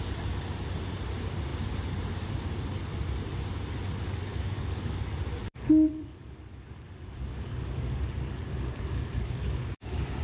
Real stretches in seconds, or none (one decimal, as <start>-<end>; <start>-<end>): 0.0-4.3; 5.0-5.4